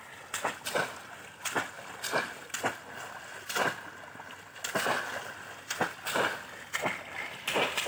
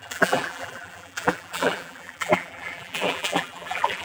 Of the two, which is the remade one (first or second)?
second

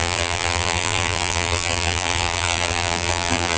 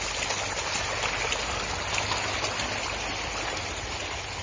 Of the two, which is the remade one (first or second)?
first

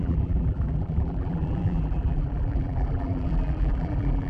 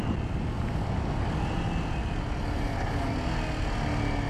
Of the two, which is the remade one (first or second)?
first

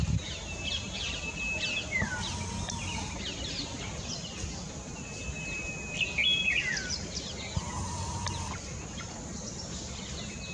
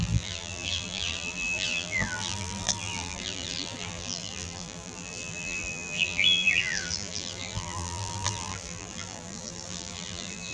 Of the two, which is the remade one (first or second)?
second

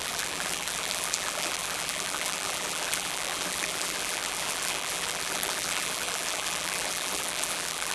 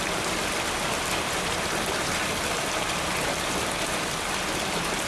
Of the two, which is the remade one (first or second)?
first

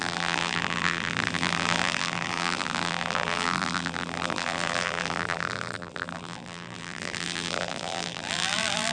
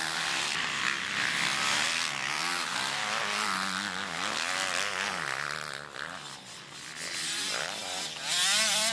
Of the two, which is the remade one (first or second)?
first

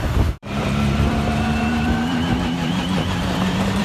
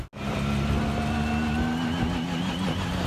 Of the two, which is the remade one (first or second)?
first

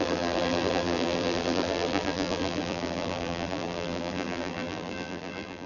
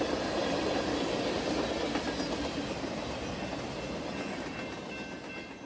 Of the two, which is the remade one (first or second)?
first